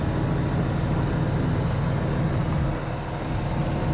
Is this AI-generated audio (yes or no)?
no